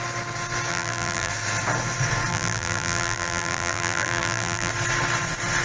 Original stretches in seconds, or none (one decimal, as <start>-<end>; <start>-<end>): 0.0-0.7; 1.3-2.3; 4.7-5.6